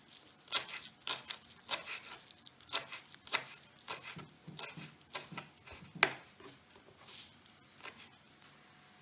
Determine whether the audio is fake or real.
real